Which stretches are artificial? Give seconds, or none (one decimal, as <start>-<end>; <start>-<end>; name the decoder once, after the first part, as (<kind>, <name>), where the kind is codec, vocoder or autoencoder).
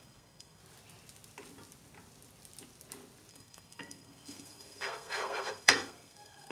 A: 0.0-0.6 (codec, SNAC); 3.3-6.5